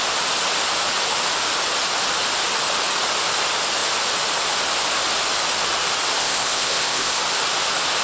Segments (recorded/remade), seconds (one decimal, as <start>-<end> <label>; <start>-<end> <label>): 0.0-6.2 recorded; 6.2-7.2 remade; 7.2-8.0 recorded